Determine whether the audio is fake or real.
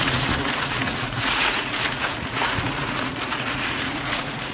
fake